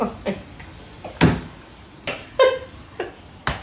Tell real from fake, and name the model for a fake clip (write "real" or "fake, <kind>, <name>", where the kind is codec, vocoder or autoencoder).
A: real